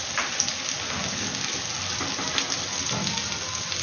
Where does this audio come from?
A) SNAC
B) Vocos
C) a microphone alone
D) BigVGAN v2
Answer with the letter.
C